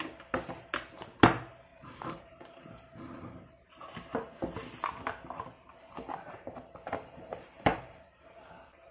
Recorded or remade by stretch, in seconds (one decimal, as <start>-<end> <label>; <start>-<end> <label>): 0.0-1.7 recorded; 1.7-3.7 remade; 3.7-5.7 recorded; 5.7-8.5 remade; 8.5-8.9 recorded